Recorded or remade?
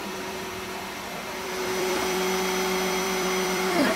remade